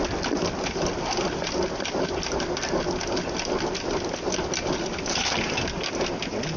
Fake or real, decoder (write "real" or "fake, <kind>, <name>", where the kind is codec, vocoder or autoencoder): real